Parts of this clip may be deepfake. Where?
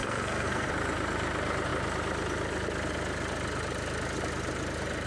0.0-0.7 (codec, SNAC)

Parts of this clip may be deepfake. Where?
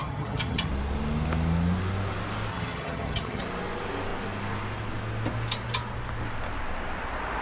0.0-0.7 (vocoder, HiFi-GAN); 2.5-3.4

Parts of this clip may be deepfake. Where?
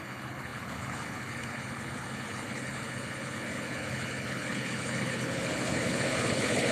0.0-6.7 (codec, HILCodec)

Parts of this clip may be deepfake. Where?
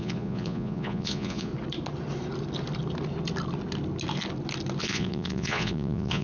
0.0-1.5 (vocoder, Vocos); 4.8-6.2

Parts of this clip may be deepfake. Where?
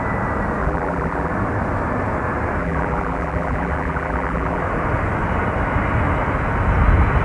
0.6-1.3 (vocoder, BigVGAN v2); 2.6-4.6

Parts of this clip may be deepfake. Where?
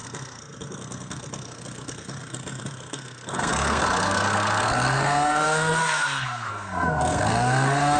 0.0-8.0 (codec, SNAC)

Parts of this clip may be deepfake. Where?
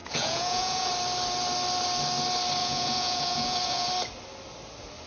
0.0-0.9 (vocoder, Vocos); 2.6-3.9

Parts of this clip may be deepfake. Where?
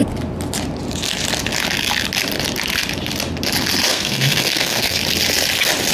3.9-5.0 (codec, SNAC)